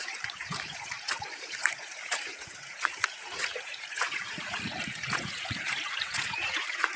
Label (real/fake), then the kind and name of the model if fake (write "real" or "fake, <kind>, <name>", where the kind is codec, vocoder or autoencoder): fake, vocoder, Vocos